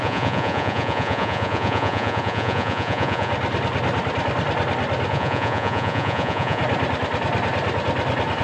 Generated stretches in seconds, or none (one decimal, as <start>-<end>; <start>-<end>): 0.0-3.3; 5.1-6.6